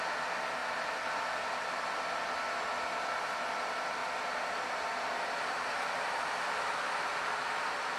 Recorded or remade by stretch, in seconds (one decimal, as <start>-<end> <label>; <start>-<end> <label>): 0.0-8.0 recorded